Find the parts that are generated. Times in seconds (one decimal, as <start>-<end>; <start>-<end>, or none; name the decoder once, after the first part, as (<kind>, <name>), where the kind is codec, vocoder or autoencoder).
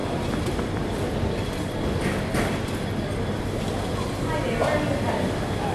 none